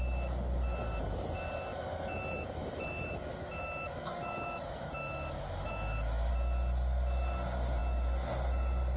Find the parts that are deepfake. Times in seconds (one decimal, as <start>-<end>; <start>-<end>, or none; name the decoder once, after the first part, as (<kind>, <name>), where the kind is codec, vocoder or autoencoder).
1.7-6.3 (autoencoder, DAC-VAE)